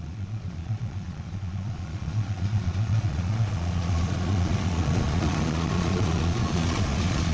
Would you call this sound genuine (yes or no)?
no